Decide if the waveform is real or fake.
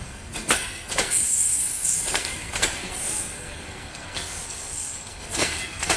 fake